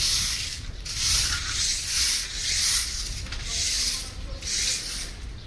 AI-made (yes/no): no